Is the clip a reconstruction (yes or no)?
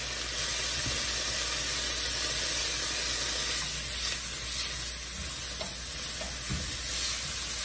no